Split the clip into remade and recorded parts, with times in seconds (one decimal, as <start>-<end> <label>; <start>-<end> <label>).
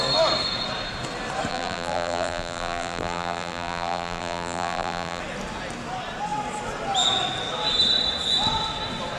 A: 0.0-1.5 recorded; 1.5-5.2 remade; 5.2-9.2 recorded